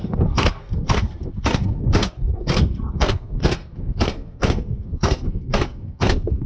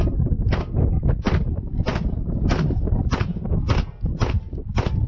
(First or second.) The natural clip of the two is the second